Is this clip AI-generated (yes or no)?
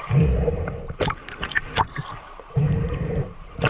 yes